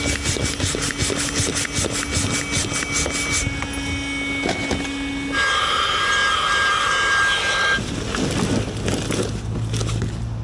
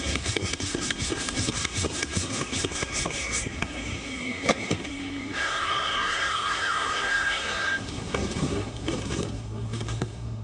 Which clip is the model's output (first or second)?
second